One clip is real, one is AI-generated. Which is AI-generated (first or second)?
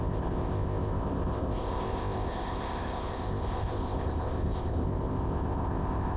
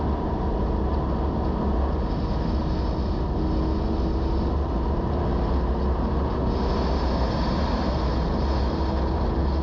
first